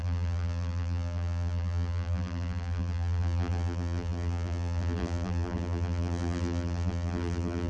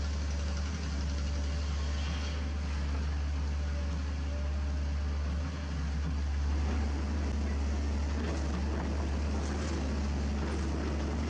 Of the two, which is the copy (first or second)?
first